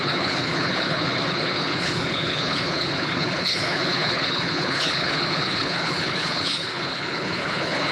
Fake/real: fake